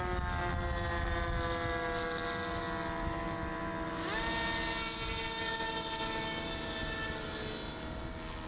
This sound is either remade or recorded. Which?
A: recorded